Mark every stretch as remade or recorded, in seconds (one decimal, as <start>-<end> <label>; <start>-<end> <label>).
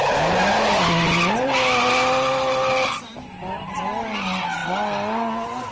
0.0-5.7 recorded